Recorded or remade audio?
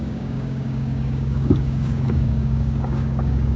remade